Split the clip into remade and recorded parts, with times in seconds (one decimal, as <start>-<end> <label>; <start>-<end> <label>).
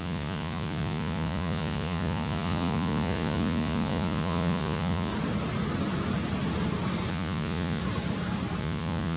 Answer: 0.0-5.1 remade; 5.1-7.1 recorded; 7.1-7.8 remade; 7.8-8.6 recorded; 8.6-9.2 remade